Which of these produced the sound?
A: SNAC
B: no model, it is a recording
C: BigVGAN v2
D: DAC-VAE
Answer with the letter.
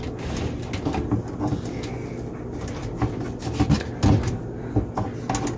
B